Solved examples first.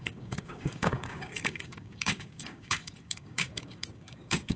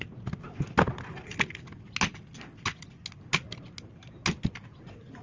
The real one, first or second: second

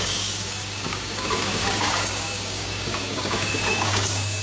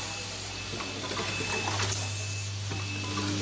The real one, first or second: second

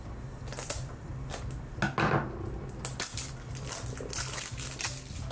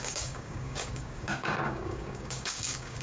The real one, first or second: first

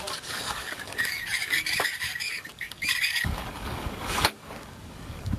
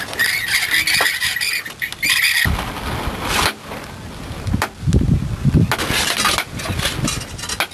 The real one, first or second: second